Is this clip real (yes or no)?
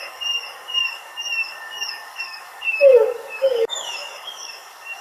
no